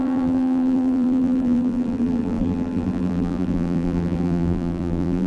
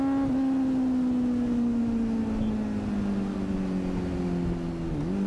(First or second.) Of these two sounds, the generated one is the first